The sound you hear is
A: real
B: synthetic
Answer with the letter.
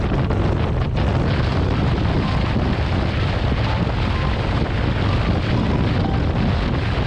A